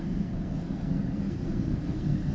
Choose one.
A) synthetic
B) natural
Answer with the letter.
A